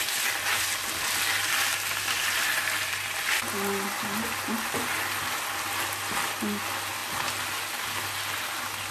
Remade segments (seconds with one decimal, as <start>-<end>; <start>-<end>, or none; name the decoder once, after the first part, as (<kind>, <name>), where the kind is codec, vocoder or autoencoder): none